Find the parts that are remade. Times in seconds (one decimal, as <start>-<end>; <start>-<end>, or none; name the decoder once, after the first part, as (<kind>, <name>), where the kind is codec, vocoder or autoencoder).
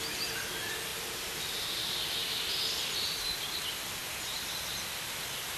0.9-1.4 (vocoder, BigVGAN v2)